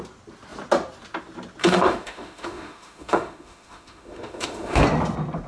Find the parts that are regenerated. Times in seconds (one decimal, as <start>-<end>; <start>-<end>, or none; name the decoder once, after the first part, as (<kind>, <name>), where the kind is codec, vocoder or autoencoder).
1.6-4.8 (autoencoder, DAC-VAE)